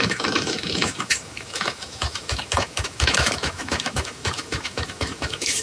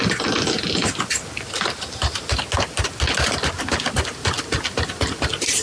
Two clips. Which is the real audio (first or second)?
second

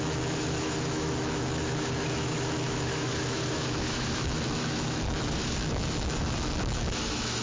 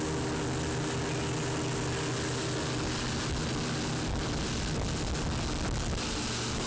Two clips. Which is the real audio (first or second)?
second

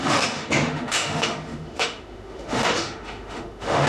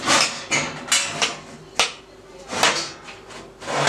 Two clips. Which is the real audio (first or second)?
second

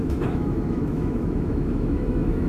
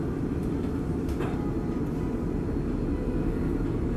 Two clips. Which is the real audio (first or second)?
second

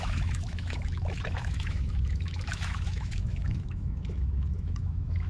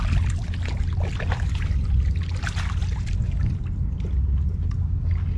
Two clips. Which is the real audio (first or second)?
second